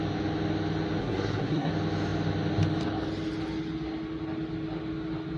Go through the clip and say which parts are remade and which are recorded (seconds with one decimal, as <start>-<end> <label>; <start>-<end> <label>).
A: 0.0-1.0 recorded; 1.0-1.7 remade; 1.7-5.4 recorded